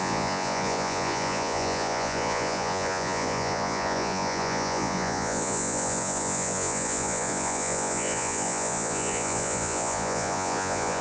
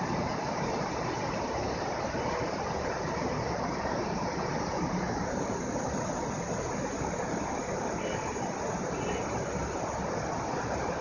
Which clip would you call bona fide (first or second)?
second